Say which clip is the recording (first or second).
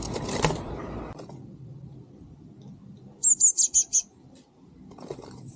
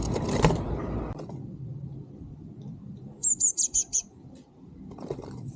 first